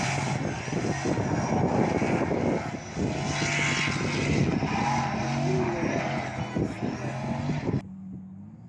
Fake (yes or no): no